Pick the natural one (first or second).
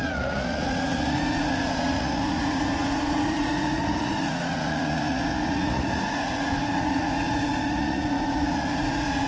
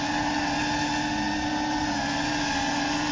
second